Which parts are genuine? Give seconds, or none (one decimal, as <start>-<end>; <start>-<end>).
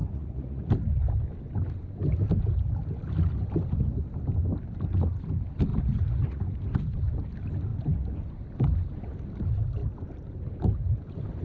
0.7-5.7; 6.4-11.4